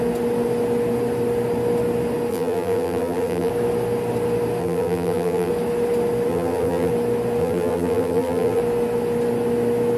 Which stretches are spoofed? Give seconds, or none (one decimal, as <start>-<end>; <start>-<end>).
2.3-3.5; 4.6-5.5; 6.3-6.9; 7.4-8.6